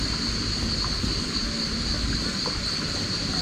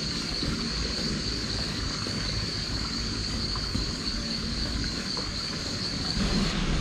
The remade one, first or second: second